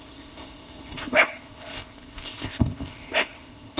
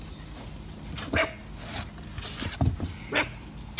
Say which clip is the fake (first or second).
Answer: first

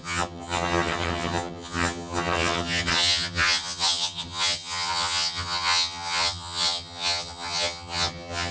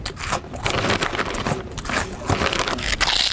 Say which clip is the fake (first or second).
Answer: first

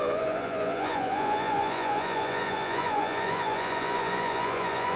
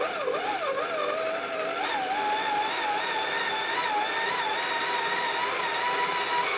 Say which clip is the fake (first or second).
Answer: first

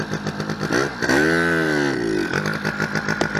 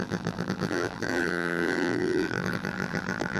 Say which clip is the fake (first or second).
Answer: second